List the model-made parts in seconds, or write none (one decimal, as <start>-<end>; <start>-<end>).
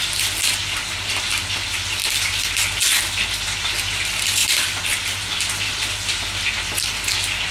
none